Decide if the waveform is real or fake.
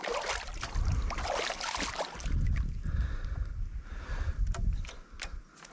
real